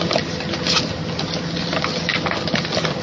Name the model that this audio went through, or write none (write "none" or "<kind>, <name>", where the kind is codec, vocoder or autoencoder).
none